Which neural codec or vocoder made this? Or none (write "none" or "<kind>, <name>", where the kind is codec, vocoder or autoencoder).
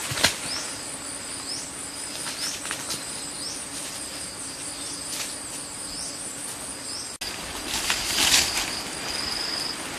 none